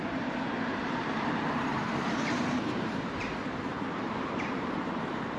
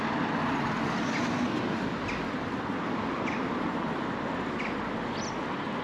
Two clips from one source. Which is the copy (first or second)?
first